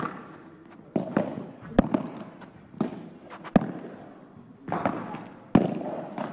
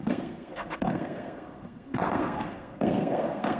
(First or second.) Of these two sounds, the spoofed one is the second